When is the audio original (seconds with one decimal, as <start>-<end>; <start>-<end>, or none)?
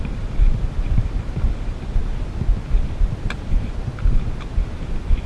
0.0-5.3